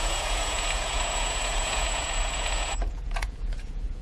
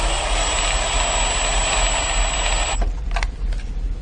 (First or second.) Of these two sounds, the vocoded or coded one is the first